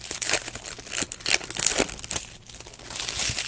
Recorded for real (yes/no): yes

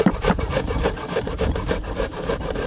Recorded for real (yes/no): no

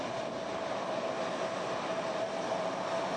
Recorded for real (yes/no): yes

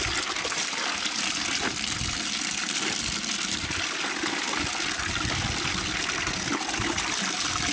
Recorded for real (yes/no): yes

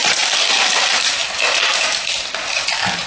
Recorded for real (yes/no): yes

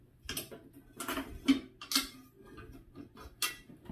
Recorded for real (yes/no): yes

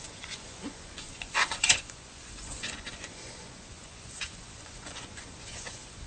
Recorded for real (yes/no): no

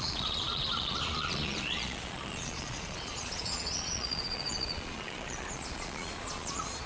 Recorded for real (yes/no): no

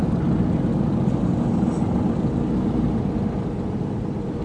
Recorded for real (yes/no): yes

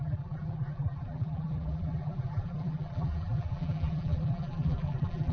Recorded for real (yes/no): no